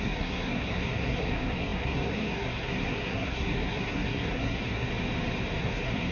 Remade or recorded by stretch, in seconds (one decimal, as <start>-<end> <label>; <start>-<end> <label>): 0.0-4.9 remade; 4.9-5.6 recorded; 5.6-6.1 remade